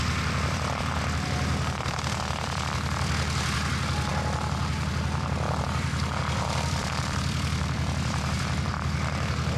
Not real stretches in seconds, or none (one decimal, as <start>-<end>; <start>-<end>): 0.0-4.1; 5.6-9.6